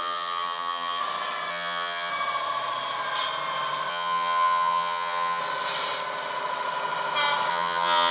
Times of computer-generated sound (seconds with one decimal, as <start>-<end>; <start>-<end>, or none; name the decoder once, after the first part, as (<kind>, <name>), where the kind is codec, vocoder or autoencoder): 0.0-1.0 (vocoder, HiFi-GAN); 1.5-2.1; 3.9-5.4; 7.5-8.1